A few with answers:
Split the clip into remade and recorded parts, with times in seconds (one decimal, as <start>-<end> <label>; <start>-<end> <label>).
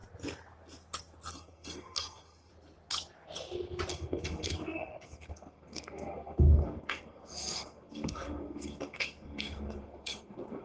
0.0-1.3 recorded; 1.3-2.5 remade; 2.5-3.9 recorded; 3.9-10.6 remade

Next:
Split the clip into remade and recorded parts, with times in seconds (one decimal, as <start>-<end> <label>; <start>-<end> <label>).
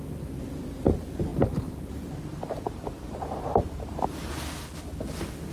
0.0-4.2 remade; 4.2-5.5 recorded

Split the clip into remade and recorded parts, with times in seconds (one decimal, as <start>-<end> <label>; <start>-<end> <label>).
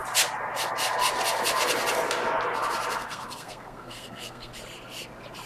0.0-2.9 recorded; 2.9-4.5 remade; 4.5-5.5 recorded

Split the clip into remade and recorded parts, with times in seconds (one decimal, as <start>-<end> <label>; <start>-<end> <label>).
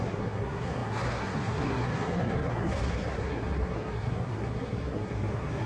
0.0-5.7 remade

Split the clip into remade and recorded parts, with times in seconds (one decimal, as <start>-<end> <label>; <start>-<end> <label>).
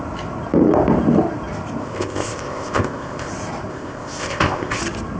0.0-1.8 recorded; 1.8-3.3 remade; 3.3-3.7 recorded; 3.7-4.8 remade; 4.8-5.2 recorded